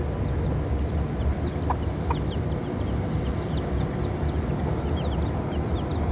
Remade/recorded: recorded